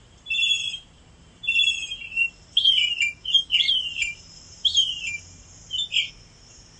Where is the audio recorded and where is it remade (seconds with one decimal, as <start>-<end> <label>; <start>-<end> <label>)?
0.0-3.1 remade; 3.1-3.7 recorded; 3.7-4.8 remade; 4.8-6.8 recorded